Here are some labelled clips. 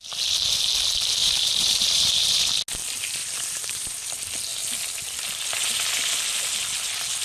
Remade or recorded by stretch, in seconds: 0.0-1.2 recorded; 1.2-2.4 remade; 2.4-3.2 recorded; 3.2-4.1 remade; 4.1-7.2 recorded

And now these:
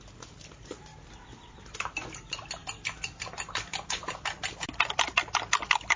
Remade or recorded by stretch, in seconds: 0.0-0.9 recorded; 0.9-1.9 remade; 1.9-2.6 recorded; 2.6-5.2 remade; 5.2-6.0 recorded

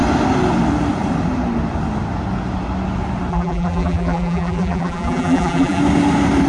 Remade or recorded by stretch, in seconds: 0.0-3.3 recorded; 3.3-5.8 remade; 5.8-6.5 recorded